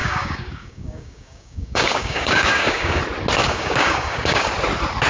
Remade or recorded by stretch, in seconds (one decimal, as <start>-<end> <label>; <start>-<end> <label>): 0.0-3.0 remade; 3.0-3.4 recorded; 3.4-4.5 remade; 4.5-5.1 recorded